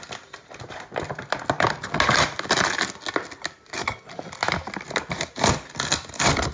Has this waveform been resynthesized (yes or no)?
no